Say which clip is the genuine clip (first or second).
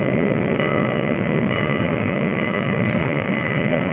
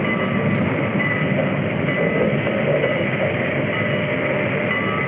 second